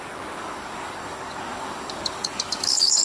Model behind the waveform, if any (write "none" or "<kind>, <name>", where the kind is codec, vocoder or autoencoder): codec, DAC